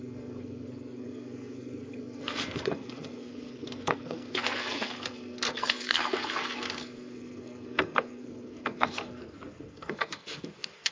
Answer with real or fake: fake